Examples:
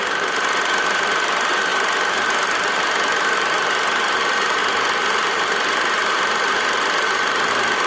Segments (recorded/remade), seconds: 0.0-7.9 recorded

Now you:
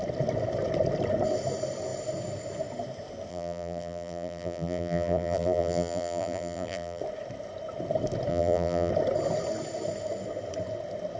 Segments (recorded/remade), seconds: 0.0-3.3 recorded; 3.3-7.0 remade; 7.0-8.3 recorded; 8.3-8.9 remade; 8.9-11.2 recorded

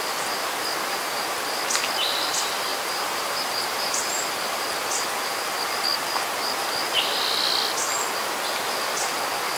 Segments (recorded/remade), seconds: 0.0-2.7 recorded; 2.7-4.2 remade; 4.2-9.6 recorded

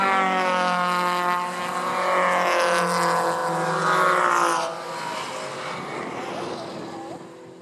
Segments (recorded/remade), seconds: 0.0-7.6 recorded

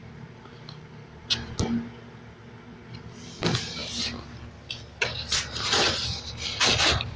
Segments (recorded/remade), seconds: 0.0-1.4 remade; 1.4-7.2 recorded

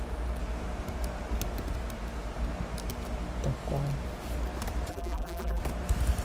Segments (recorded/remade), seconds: 0.0-4.9 recorded; 4.9-5.6 remade; 5.6-6.2 recorded

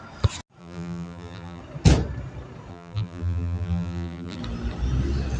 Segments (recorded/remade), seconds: 0.0-0.6 recorded; 0.6-1.6 remade; 1.6-2.7 recorded; 2.7-4.4 remade; 4.4-5.4 recorded